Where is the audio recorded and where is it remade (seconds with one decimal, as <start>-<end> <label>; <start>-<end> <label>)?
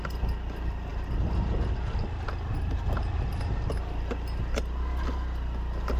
0.0-6.0 recorded